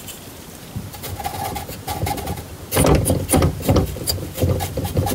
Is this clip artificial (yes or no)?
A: yes